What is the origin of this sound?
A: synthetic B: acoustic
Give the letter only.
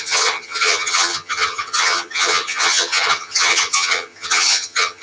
A